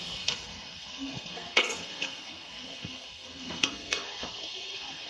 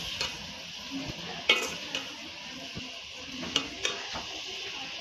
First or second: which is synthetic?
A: first